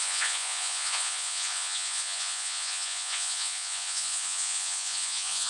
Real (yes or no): no